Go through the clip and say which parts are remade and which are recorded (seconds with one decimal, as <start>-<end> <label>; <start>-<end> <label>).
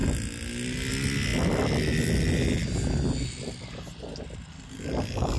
0.0-5.4 recorded